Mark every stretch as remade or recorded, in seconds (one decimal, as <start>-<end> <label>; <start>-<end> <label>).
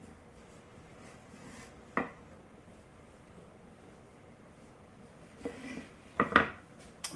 0.0-0.9 recorded; 0.9-1.4 remade; 1.4-2.9 recorded; 2.9-3.5 remade; 3.5-7.2 recorded